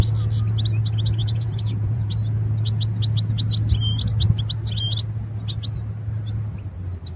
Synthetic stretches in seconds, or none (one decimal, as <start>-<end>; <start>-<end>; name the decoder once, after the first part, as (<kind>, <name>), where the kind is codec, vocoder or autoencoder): 1.2-2.1 (vocoder, Vocos)